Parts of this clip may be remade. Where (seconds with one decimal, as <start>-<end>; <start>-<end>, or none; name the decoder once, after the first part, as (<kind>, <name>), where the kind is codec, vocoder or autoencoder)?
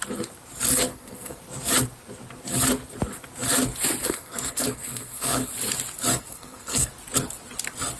0.9-1.4 (codec, SNAC); 4.0-5.5; 6.1-6.9